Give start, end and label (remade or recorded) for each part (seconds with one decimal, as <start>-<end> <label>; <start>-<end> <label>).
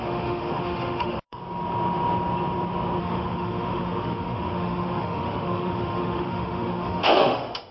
0.0-1.4 remade; 1.4-3.0 recorded; 3.0-7.7 remade